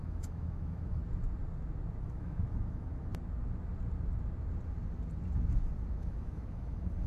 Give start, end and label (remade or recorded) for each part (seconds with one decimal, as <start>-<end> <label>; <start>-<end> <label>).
0.0-1.0 remade; 1.0-2.0 recorded; 2.0-3.1 remade; 3.1-5.9 recorded; 5.9-7.1 remade